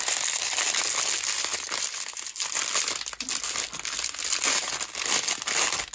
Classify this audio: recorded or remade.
recorded